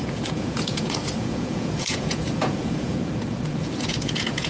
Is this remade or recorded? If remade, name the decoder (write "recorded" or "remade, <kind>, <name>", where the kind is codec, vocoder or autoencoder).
remade, vocoder, Vocos